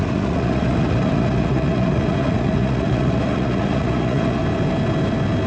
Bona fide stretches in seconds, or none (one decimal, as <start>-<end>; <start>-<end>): 4.4-5.5